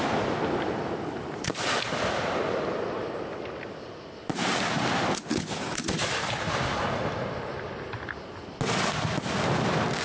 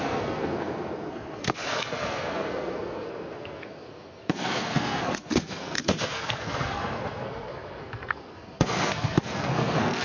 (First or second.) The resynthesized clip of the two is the second